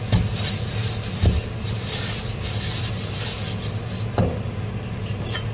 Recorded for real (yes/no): yes